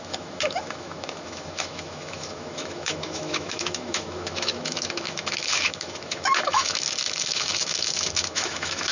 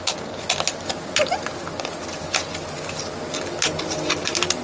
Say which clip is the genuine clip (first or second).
second